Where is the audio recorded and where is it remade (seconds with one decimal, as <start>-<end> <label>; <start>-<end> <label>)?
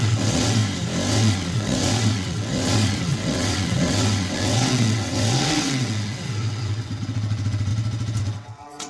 0.0-0.6 remade; 0.6-1.1 recorded; 1.1-7.7 remade; 7.7-8.2 recorded; 8.2-8.9 remade